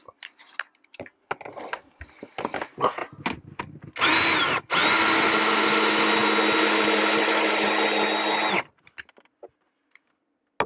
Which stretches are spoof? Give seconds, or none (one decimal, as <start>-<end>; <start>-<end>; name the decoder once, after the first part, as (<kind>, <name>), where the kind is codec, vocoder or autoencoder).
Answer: none